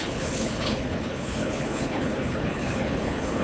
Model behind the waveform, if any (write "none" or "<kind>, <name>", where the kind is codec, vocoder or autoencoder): codec, HILCodec